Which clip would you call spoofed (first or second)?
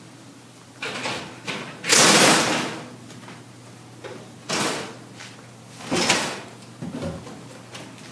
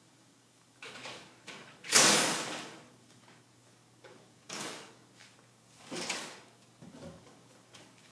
second